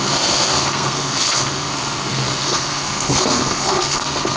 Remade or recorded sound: remade